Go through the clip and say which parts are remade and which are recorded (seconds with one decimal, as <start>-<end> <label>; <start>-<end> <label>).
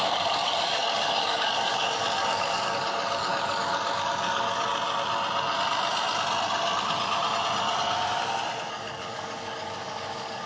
0.0-4.7 remade; 4.7-8.7 recorded; 8.7-10.5 remade